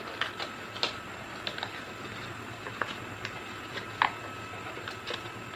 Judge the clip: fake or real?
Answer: real